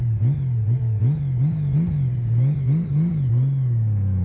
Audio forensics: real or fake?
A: real